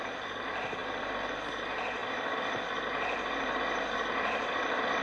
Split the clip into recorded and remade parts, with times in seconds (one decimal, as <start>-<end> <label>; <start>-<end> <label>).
0.0-0.8 recorded; 0.8-1.3 remade; 1.3-2.0 recorded; 2.0-5.0 remade